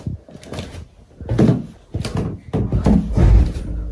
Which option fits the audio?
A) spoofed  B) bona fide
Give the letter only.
B